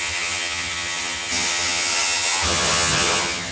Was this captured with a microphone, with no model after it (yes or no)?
no